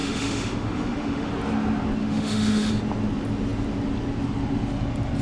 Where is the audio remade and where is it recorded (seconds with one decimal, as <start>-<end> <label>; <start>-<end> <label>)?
0.0-1.3 remade; 1.3-2.0 recorded; 2.0-2.7 remade; 2.7-5.2 recorded